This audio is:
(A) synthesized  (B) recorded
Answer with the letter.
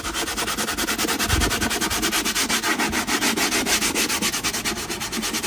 B